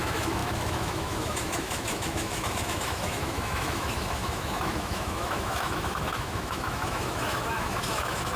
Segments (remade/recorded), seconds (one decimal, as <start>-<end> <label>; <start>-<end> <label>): 0.0-8.4 remade